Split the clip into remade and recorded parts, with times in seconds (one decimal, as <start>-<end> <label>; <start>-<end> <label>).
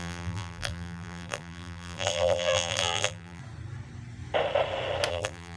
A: 0.0-3.4 remade; 3.4-5.1 recorded; 5.1-5.6 remade